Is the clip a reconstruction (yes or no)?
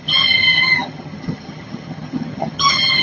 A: yes